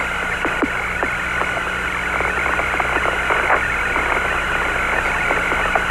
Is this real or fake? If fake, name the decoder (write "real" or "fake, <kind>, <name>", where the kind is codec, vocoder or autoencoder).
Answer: real